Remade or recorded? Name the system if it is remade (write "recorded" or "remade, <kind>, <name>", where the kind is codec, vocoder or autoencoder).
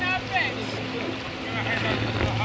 recorded